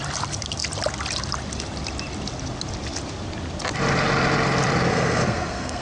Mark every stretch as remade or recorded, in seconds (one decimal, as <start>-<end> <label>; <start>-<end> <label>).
0.0-4.9 recorded; 4.9-5.8 remade